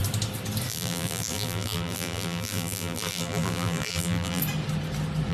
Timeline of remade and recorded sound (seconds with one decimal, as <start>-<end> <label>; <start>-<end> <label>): 0.0-0.7 recorded; 0.7-4.4 remade; 4.4-5.3 recorded